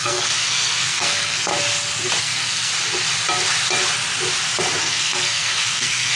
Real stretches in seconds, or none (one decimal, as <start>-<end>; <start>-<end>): 1.5-2.2; 2.7-4.8